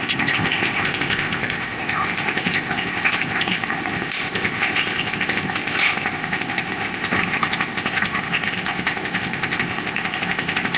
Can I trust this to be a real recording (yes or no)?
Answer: no